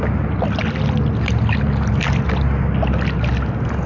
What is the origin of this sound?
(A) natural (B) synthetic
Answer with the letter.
A